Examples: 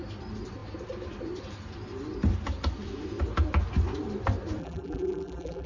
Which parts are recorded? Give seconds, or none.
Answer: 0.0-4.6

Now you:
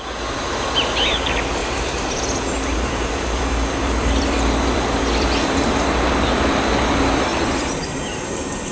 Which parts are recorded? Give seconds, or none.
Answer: 0.0-1.6; 5.8-8.7

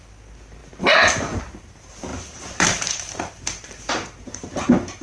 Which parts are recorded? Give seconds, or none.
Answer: 0.0-0.6; 1.4-2.1